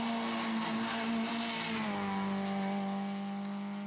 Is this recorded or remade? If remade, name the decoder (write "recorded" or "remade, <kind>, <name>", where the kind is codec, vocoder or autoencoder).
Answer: recorded